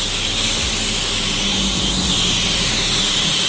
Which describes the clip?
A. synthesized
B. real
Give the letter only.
B